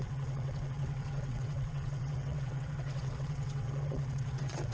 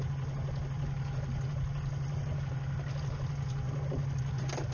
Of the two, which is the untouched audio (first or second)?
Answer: second